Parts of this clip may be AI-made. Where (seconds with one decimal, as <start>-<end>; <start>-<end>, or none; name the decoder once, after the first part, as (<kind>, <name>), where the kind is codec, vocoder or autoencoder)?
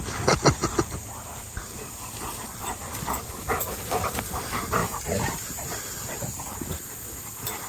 0.6-2.3 (vocoder, BigVGAN v2); 4.8-6.7